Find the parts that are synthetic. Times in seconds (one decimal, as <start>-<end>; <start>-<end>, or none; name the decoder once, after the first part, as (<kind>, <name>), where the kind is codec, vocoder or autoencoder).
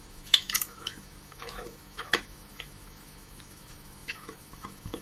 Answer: 0.0-5.0 (autoencoder, DAC-VAE)